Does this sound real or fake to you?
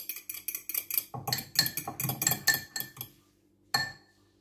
real